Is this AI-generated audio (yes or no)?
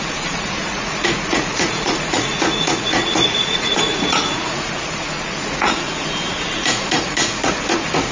yes